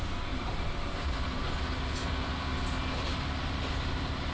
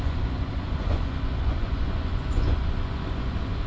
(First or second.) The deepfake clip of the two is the second